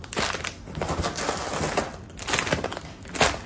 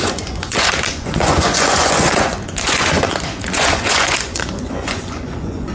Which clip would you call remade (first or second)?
second